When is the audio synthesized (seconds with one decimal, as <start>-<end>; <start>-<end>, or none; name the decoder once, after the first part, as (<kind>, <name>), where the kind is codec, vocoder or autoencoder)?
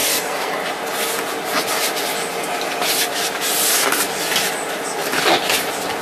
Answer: 0.0-0.5 (codec, SNAC)